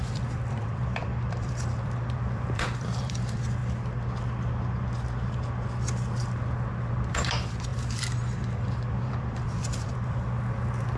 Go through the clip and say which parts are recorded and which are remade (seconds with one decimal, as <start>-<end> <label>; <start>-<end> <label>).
0.0-3.6 remade; 3.6-6.9 recorded; 6.9-11.0 remade